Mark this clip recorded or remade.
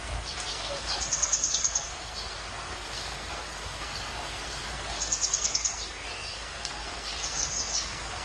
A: remade